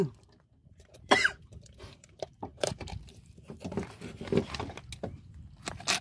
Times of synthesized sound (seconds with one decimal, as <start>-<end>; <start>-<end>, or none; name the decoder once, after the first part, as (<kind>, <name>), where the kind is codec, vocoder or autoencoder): 0.6-2.9 (vocoder, BigVGAN v2)